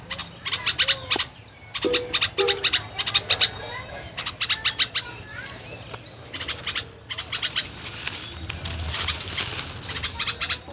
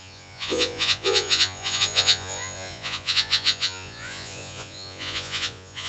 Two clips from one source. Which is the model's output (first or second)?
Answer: second